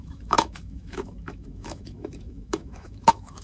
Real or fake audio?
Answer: fake